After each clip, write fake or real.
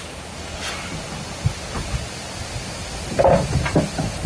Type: real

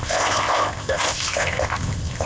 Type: fake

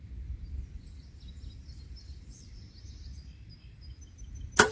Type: real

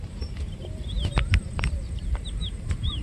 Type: fake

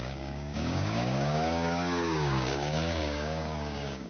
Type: fake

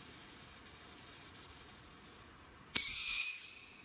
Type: fake